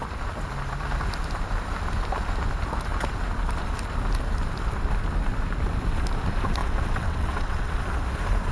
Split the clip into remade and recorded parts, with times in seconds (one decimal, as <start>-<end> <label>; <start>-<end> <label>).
0.0-6.6 recorded; 6.6-7.8 remade; 7.8-8.5 recorded